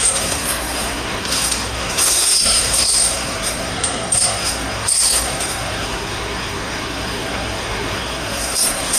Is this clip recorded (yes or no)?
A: no